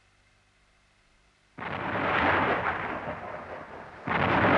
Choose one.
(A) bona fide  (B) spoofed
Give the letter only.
A